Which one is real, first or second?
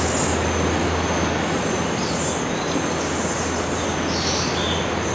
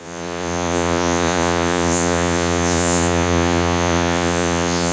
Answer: first